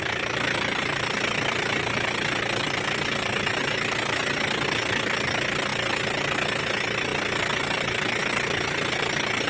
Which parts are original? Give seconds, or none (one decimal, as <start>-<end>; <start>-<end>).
0.0-9.5